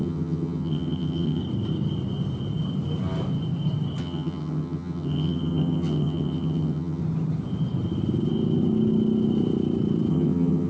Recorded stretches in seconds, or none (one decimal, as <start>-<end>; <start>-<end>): 1.4-4.0; 7.0-10.1